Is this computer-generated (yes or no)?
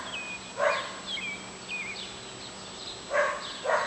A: no